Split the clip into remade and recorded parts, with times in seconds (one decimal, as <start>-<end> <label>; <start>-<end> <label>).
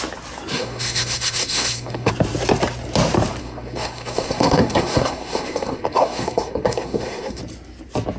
0.0-0.5 recorded; 0.5-2.1 remade; 2.1-3.4 recorded; 3.4-7.4 remade; 7.4-8.2 recorded